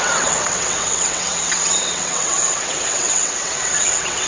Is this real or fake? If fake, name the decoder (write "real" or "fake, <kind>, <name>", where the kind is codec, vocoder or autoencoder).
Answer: fake, vocoder, WaveNeXt